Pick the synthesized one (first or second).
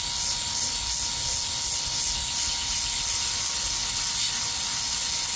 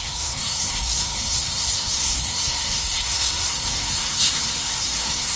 second